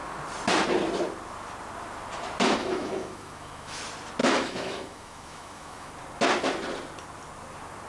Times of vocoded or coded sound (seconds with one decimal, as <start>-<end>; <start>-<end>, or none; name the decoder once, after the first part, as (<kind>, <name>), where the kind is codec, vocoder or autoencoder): 2.6-3.8 (autoencoder, DAC-VAE); 4.2-5.9